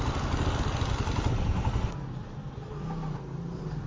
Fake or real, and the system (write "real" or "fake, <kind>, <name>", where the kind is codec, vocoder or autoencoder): real